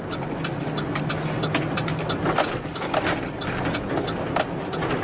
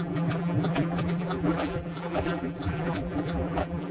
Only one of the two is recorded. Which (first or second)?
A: first